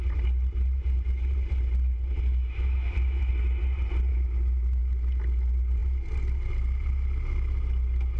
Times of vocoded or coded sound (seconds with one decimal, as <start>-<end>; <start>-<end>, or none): 2.3-3.3; 4.1-4.8